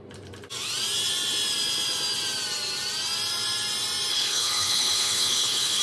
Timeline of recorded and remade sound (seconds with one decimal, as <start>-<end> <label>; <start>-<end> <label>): 0.0-4.1 recorded; 4.1-5.8 remade